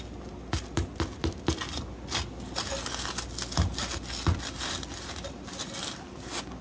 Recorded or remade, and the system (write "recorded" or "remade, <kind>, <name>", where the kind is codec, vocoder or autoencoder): recorded